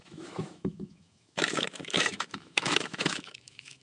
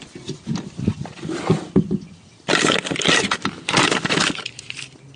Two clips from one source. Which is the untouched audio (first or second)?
second